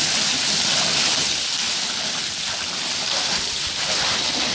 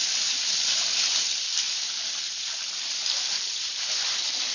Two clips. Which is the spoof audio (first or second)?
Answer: second